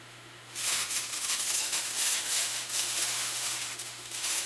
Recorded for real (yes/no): no